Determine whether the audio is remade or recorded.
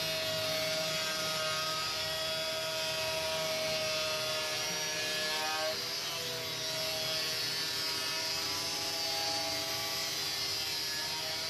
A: recorded